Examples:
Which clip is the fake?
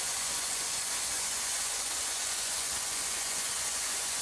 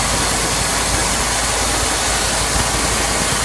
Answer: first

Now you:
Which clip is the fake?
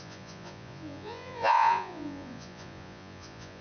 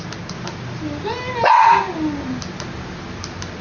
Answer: first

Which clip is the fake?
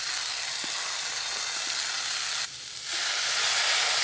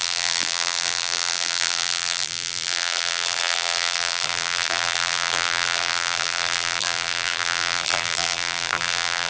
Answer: second